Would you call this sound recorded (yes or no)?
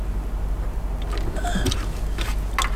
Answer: yes